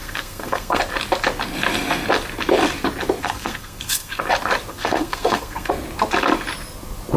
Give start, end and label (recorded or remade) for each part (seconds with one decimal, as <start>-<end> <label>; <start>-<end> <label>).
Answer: 0.0-0.8 remade; 0.8-3.2 recorded; 3.2-4.2 remade; 4.2-4.7 recorded; 4.7-5.7 remade; 5.7-7.2 recorded